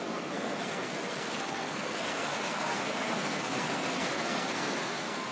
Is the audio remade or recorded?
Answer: remade